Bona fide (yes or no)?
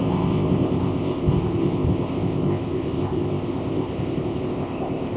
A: no